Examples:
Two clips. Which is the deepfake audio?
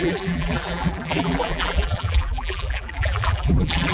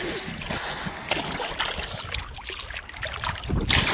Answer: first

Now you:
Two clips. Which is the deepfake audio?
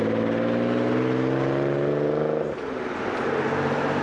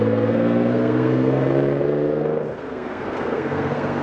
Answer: second